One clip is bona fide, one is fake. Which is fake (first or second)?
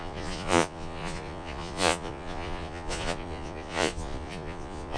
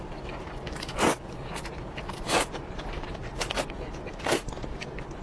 first